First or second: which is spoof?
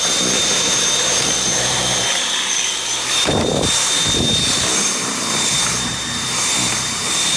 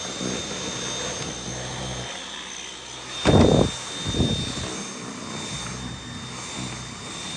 first